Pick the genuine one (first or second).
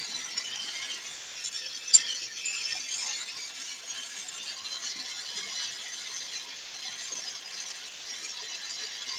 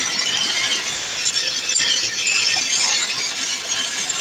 first